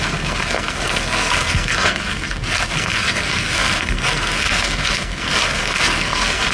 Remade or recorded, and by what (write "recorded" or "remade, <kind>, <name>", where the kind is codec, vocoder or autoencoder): remade, codec, SNAC